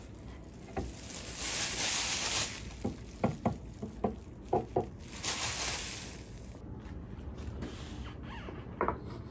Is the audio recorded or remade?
recorded